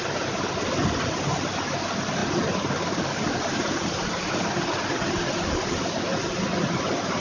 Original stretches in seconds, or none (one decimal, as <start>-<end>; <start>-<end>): 0.0-7.2